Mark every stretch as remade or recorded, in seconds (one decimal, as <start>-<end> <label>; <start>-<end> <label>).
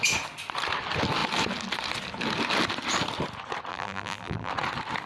0.0-3.7 recorded; 3.7-4.5 remade; 4.5-5.1 recorded